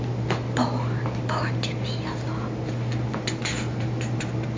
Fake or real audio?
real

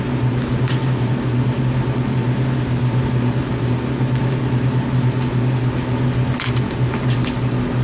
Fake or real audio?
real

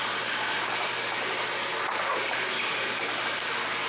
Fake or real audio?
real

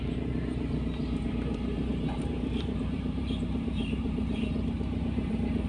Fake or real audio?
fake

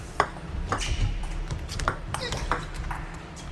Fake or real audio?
fake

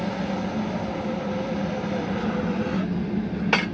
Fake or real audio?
real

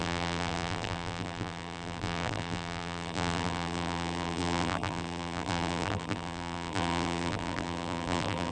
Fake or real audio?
fake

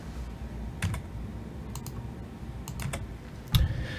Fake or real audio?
real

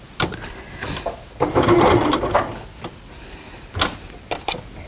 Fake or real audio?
real